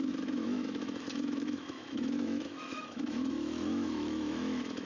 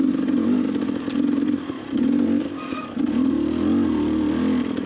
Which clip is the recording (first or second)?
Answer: second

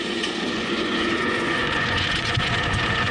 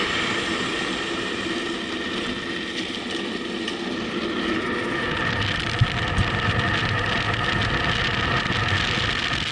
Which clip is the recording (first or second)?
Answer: second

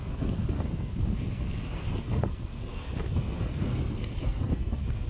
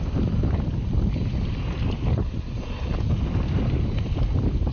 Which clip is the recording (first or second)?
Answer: second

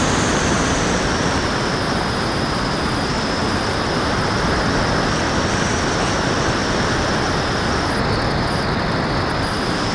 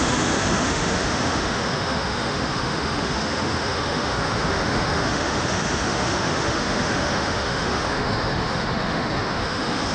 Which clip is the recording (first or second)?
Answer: first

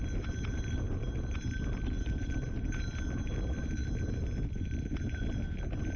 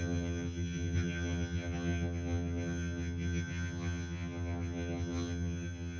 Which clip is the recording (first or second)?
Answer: first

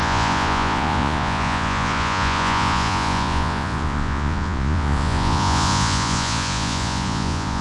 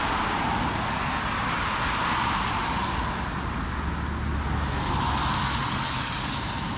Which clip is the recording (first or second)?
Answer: second